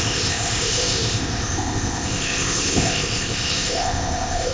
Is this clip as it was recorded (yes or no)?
no